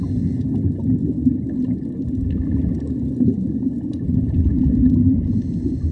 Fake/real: real